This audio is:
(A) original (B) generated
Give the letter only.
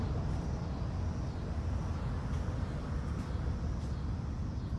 A